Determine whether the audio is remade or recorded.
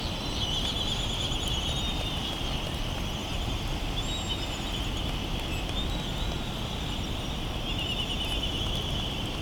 recorded